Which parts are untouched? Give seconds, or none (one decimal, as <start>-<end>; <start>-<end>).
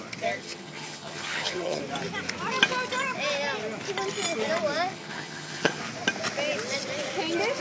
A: 0.0-0.4; 1.8-4.9; 5.8-7.6